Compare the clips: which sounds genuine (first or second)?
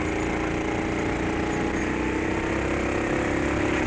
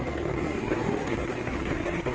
first